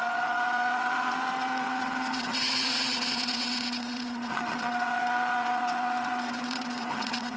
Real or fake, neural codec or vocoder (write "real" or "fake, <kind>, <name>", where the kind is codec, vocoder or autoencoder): fake, vocoder, WaveNeXt